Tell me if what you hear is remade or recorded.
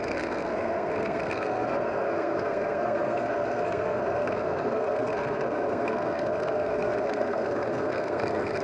remade